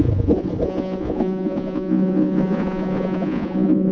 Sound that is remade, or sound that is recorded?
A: remade